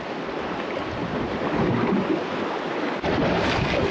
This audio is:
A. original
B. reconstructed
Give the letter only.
A